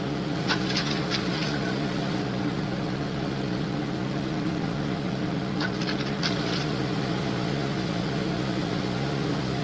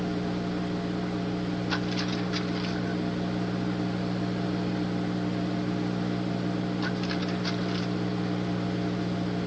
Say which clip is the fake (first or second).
first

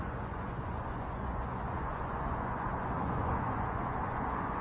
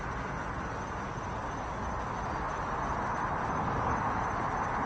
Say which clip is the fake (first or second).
first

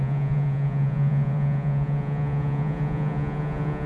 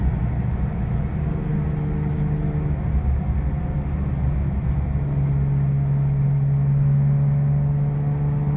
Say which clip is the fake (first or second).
first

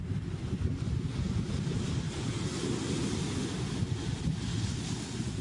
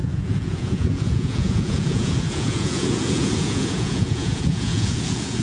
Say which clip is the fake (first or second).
second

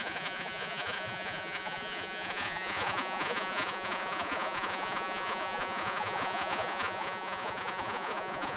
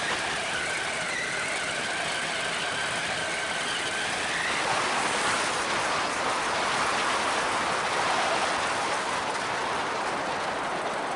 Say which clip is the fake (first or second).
first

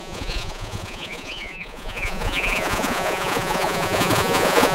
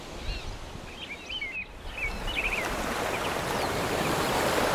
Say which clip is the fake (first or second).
first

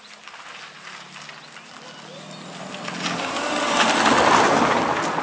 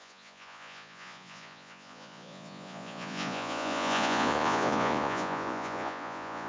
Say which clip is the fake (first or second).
second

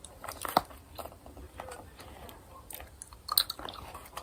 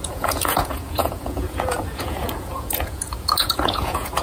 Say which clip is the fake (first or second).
second